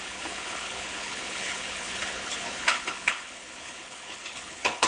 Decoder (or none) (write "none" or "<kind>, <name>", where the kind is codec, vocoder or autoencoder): codec, HILCodec